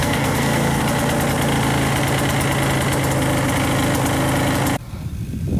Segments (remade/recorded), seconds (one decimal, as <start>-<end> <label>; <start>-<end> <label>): 0.0-0.8 remade; 0.8-5.6 recorded